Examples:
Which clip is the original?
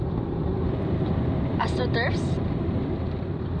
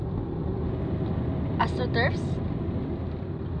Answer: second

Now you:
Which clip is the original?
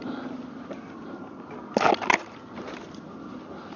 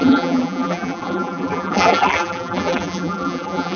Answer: first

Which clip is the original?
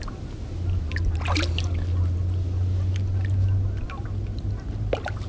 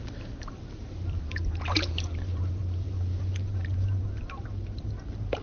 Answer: first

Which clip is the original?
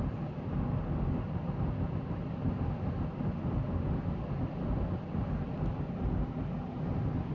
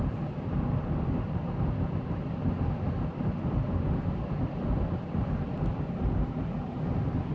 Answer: first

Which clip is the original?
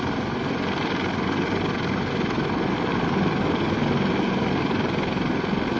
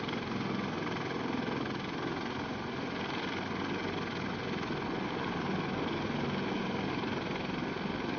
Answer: second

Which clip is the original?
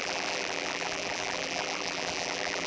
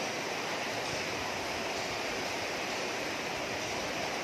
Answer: second